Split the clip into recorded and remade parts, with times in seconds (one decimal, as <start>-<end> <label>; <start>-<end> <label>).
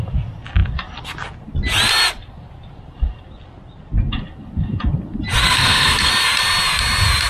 0.0-5.4 recorded; 5.4-6.1 remade; 6.1-7.3 recorded